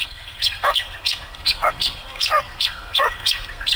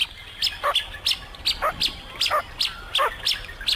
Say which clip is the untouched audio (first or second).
second